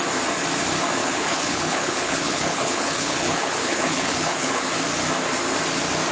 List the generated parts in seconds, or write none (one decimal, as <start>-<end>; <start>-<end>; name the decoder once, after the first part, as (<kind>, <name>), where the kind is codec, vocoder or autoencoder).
1.0-4.7 (codec, HILCodec)